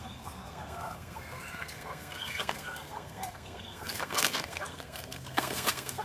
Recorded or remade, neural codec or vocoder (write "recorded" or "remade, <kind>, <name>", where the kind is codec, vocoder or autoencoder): remade, codec, SNAC